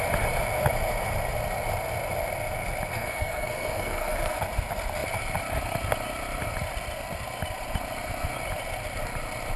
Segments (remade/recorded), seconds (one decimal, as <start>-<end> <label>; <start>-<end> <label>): 0.0-2.9 recorded; 2.9-4.4 remade; 4.4-9.6 recorded